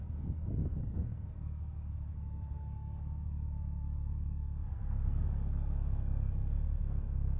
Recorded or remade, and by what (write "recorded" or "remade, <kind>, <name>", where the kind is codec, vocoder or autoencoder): remade, codec, SNAC